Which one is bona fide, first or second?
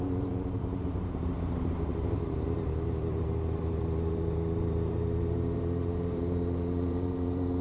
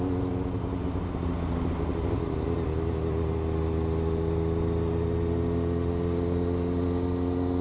second